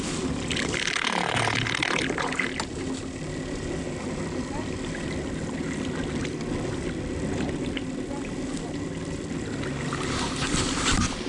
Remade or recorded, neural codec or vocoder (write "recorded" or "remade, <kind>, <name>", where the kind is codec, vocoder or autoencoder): recorded